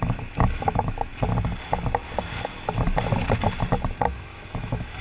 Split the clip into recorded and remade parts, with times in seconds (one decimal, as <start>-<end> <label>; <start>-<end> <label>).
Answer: 0.0-1.1 remade; 1.1-4.1 recorded; 4.1-5.0 remade